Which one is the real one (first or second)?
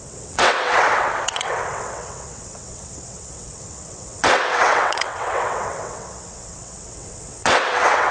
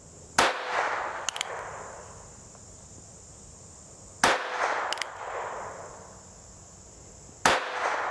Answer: second